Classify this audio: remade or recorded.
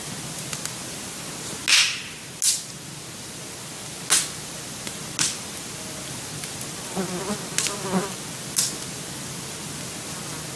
recorded